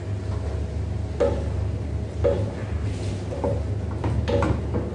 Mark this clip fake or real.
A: real